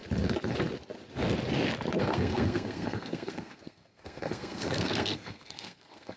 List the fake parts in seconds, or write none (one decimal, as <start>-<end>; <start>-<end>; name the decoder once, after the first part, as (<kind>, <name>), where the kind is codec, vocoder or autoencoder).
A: 2.0-6.2 (codec, SNAC)

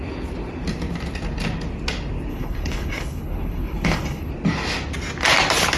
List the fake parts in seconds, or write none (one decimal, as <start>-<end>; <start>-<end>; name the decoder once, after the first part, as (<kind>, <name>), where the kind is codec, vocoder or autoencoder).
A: 2.3-4.3 (codec, HILCodec)